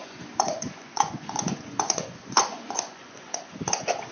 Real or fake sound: fake